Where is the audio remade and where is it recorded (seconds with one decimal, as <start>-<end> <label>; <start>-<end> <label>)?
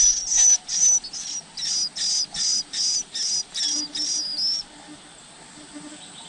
0.0-6.3 recorded